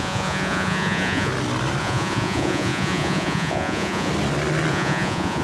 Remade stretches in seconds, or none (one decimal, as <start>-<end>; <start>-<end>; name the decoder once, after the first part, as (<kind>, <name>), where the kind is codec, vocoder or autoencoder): 0.0-1.3 (vocoder, Vocos); 1.8-4.1; 4.7-5.4